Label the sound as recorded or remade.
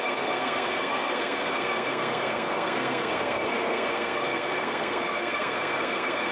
remade